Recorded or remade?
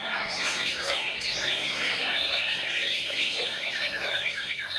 remade